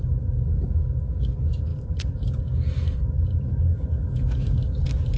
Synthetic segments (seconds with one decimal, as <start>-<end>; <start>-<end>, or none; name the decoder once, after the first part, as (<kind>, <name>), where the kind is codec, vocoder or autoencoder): 1.7-2.4 (vocoder, BigVGAN v2); 2.8-3.5